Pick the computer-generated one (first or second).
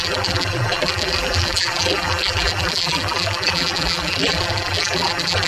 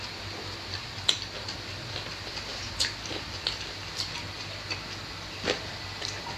first